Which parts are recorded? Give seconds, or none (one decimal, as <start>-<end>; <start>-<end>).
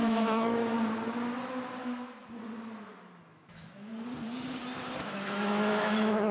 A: 0.7-1.8; 2.2-3.2; 3.9-5.0